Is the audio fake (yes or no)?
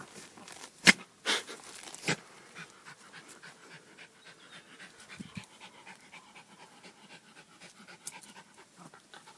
no